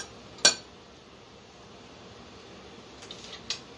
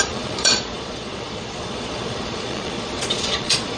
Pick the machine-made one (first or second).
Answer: second